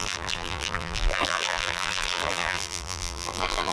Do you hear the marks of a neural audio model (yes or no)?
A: yes